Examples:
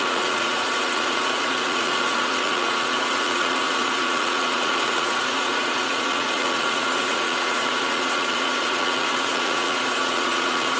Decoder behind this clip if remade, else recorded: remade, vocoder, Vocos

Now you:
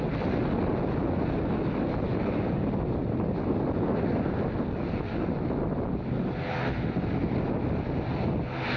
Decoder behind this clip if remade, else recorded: recorded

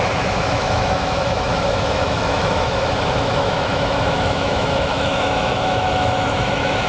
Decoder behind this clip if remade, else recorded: remade, autoencoder, DAC-VAE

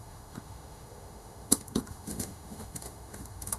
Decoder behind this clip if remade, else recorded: remade, autoencoder, DAC-VAE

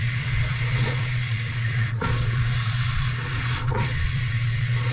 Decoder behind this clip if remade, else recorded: remade, vocoder, Vocos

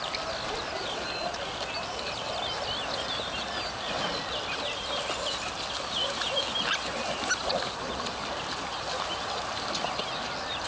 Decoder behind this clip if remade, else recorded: recorded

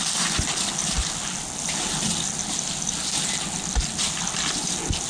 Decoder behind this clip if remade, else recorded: recorded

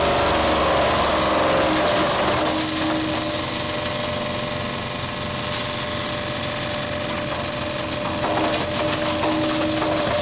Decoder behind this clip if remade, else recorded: recorded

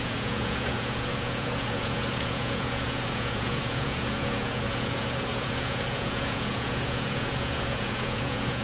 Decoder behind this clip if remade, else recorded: remade, vocoder, Vocos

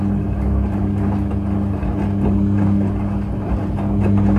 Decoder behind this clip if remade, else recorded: recorded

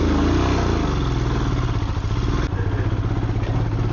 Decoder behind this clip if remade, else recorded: recorded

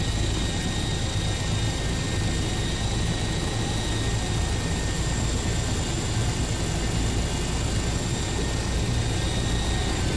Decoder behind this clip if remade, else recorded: recorded